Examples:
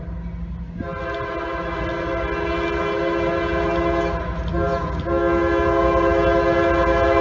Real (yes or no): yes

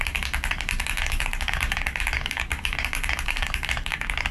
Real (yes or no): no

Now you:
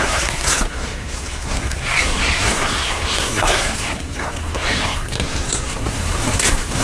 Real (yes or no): no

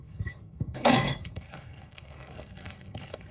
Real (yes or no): no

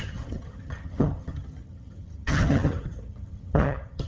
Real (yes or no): no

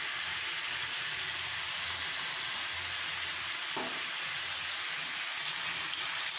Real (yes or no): yes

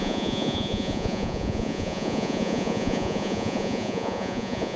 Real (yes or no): no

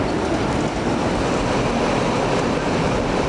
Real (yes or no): yes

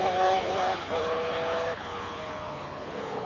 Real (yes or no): no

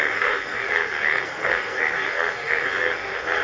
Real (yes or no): no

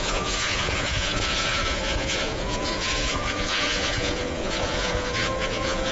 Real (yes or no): no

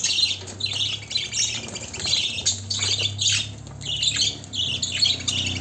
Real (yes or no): yes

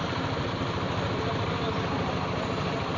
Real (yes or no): no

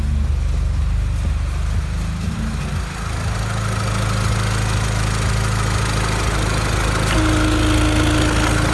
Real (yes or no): yes